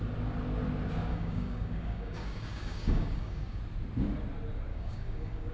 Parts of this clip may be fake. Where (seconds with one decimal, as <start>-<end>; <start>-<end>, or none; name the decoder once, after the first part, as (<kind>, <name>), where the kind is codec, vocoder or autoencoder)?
1.1-3.6 (codec, DAC); 4.7-5.5